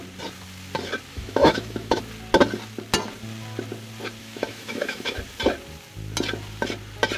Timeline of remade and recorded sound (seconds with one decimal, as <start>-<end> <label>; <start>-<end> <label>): 0.0-1.1 recorded; 1.1-2.0 remade; 2.0-4.2 recorded; 4.2-5.2 remade; 5.2-7.2 recorded